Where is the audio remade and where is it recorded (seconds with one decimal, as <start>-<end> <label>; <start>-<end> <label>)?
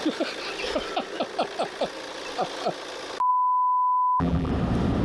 0.0-3.3 recorded; 3.3-4.5 remade; 4.5-5.0 recorded